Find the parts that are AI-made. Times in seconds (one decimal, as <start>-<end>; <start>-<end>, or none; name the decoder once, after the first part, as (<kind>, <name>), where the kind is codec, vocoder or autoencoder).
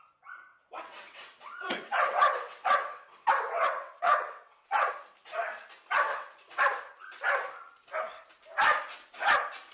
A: 0.5-4.9 (vocoder, WaveNeXt); 6.1-6.6